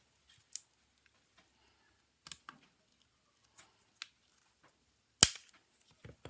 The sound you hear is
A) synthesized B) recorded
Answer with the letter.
B